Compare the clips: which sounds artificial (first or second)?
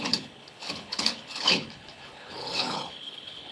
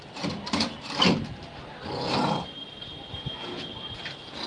first